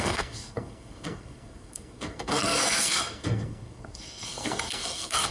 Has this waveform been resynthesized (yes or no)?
yes